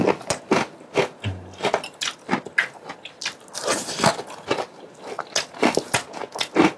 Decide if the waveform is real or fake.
real